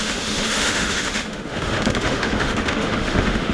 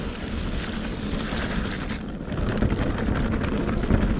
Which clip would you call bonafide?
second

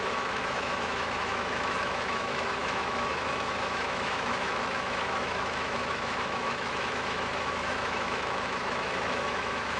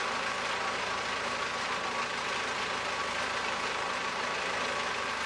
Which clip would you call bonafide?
second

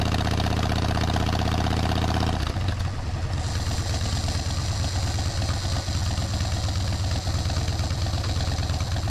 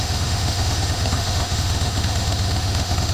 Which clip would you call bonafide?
first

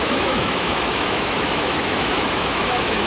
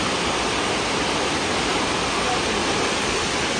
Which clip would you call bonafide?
second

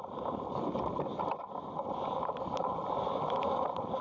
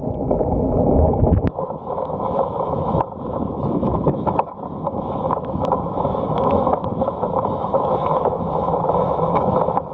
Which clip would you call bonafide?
first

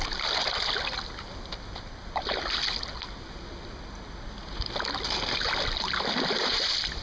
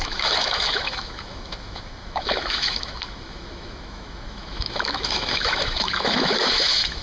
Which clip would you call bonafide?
first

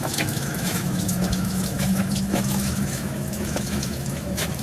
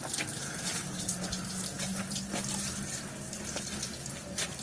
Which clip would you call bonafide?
second